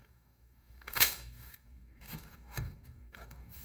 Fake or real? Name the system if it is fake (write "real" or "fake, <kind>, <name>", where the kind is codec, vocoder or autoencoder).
fake, codec, DAC